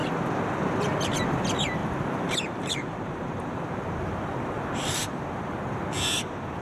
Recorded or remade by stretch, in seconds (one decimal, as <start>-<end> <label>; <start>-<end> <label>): 0.0-1.8 recorded; 1.8-5.8 remade; 5.8-6.6 recorded